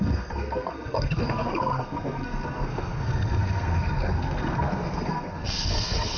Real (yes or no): no